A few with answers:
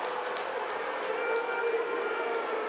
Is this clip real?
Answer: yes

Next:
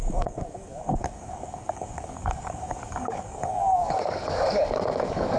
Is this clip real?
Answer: no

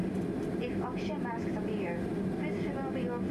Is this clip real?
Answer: yes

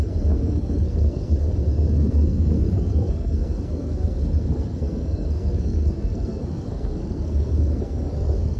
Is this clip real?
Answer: no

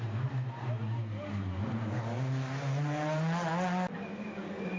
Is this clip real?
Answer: yes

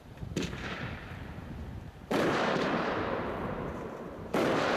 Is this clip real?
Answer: no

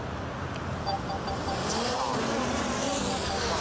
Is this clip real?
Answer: yes